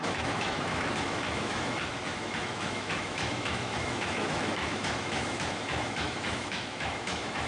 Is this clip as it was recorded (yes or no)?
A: no